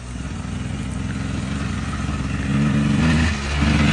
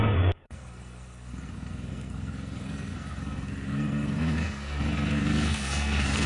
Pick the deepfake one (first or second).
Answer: second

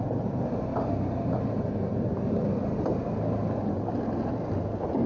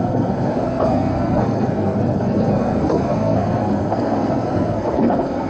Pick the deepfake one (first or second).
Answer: second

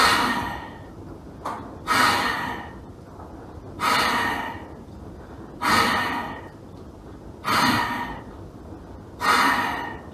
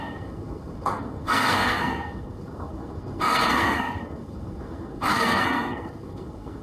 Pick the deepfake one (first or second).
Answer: second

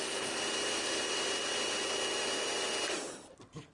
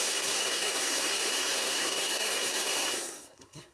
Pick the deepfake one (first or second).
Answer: second